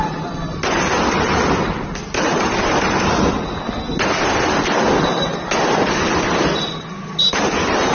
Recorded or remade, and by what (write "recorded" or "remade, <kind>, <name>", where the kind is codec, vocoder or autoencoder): recorded